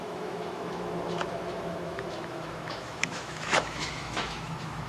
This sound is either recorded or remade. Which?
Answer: remade